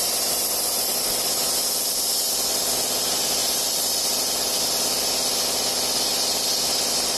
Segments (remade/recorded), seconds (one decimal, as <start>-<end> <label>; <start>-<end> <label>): 0.0-3.4 recorded; 3.4-4.0 remade; 4.0-7.2 recorded